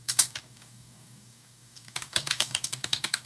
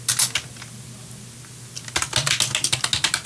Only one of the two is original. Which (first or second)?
second